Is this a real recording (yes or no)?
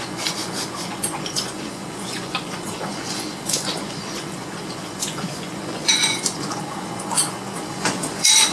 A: no